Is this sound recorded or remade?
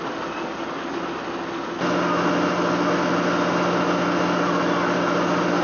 recorded